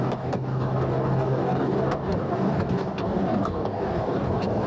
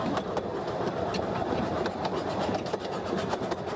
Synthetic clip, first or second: first